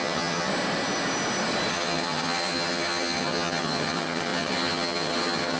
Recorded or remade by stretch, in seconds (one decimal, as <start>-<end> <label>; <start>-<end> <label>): 0.0-0.5 remade; 0.5-1.7 recorded; 1.7-5.6 remade